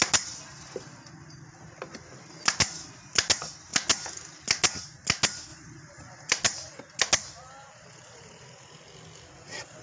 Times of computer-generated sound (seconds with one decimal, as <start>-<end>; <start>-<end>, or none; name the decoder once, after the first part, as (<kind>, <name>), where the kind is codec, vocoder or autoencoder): none